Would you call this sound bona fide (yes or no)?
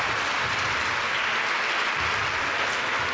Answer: yes